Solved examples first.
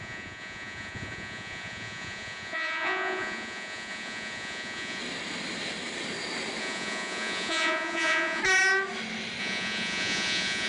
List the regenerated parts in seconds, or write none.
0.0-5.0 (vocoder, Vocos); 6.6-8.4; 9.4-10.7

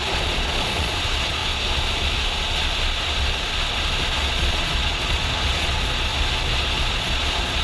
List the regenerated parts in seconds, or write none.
0.0-1.4 (vocoder, Vocos); 4.3-6.1; 6.9-7.6

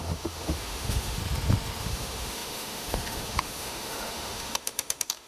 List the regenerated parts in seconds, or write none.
0.0-1.2 (autoencoder, DAC-VAE); 1.8-5.3

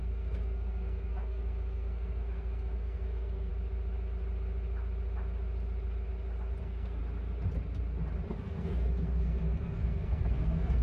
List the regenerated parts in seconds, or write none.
0.0-3.5 (codec, SNAC); 6.6-7.0; 8.3-10.8

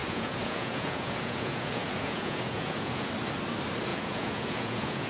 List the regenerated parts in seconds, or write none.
0.0-3.1 (vocoder, Vocos); 3.9-5.1